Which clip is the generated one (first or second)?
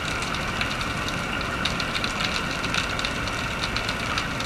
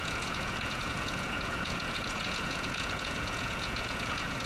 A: second